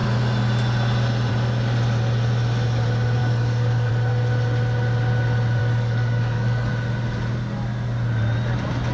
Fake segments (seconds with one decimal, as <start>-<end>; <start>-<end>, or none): 3.2-3.9; 5.6-6.7